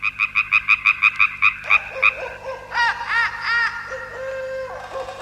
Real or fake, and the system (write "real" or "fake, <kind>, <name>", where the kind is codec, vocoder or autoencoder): real